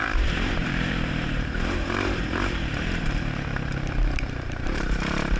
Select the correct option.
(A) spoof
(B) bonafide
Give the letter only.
A